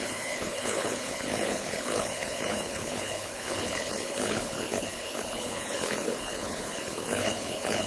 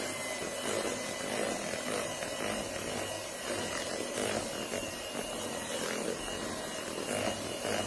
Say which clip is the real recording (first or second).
second